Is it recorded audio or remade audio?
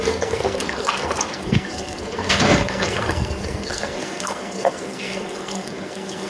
remade